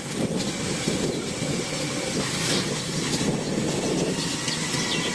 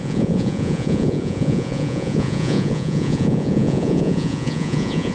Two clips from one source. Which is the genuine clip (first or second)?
first